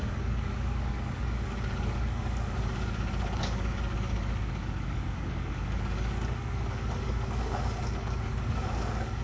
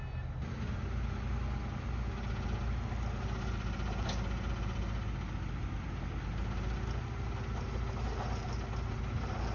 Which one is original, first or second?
second